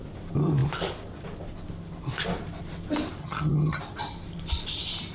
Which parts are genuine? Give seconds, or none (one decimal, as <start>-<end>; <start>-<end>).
0.0-3.2; 3.8-5.1